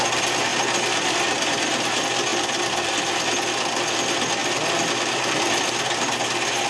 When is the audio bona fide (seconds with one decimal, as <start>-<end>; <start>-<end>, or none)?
0.0-6.7